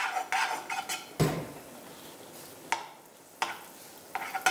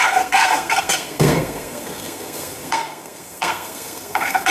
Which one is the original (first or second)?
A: first